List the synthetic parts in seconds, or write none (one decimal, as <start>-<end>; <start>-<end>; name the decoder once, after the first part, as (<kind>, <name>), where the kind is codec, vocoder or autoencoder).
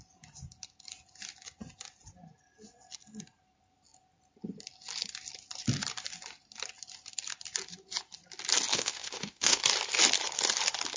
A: 8.7-9.6 (autoencoder, DAC-VAE)